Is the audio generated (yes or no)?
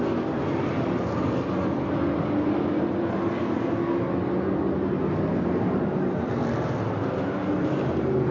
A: no